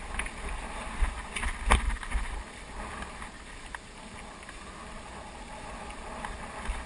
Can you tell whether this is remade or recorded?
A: recorded